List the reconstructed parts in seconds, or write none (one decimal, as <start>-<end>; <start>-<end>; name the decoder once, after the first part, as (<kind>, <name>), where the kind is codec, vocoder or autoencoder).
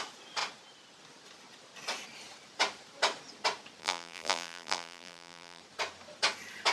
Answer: 3.8-5.6 (vocoder, BigVGAN v2)